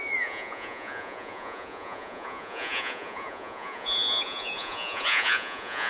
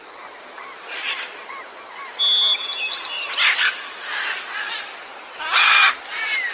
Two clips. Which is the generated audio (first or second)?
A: first